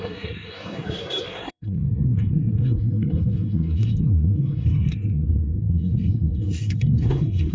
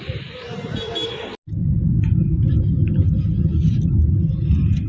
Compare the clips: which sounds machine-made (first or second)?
first